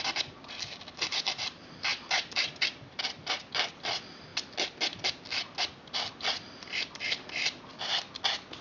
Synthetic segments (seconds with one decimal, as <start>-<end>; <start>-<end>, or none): 0.0-4.3; 6.2-7.7